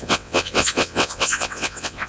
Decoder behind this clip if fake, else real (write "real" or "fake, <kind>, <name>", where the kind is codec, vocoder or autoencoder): fake, vocoder, WaveNeXt